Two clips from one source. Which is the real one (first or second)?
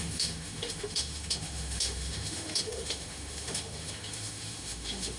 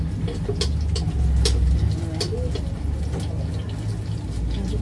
second